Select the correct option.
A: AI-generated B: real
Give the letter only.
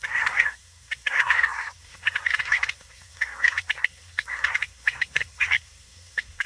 A